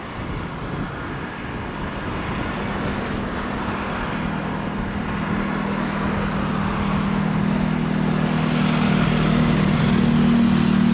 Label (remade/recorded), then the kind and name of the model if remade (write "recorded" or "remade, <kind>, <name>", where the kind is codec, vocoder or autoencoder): recorded